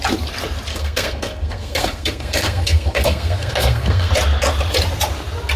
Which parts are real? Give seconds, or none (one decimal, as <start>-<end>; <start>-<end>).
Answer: 0.0-0.7; 4.1-5.6